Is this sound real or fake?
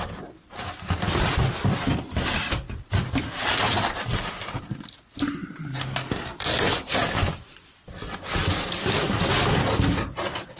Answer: real